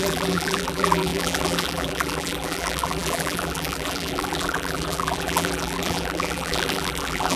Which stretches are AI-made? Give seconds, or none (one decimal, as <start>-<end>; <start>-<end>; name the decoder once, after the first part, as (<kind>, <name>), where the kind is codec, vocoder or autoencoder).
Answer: 0.0-7.4 (vocoder, BigVGAN v2)